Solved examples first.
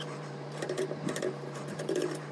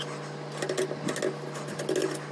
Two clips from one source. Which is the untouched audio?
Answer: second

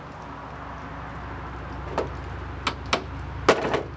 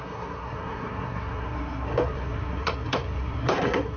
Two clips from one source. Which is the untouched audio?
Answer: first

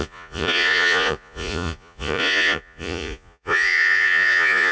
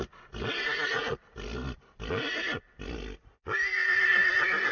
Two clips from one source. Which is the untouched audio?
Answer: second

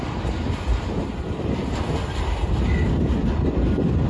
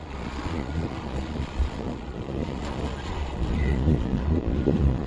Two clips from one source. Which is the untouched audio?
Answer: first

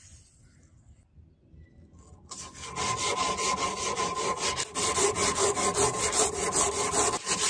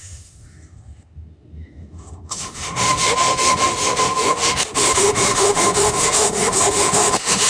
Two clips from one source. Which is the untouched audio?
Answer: first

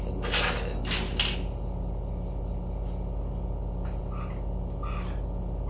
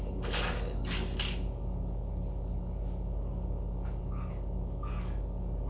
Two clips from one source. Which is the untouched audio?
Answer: first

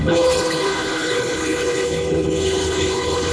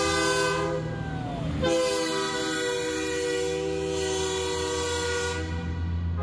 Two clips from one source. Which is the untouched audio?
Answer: second